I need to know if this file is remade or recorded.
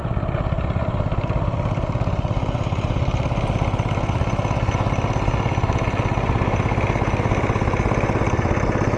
recorded